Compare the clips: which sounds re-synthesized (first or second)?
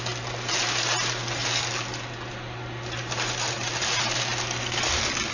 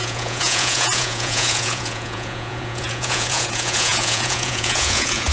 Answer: second